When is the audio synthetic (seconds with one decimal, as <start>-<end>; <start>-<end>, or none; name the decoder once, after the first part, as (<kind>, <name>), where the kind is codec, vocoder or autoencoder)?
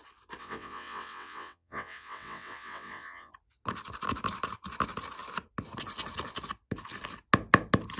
0.4-3.3 (vocoder, WaveNeXt)